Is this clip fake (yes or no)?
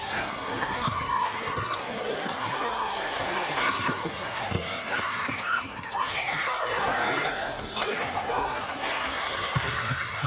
yes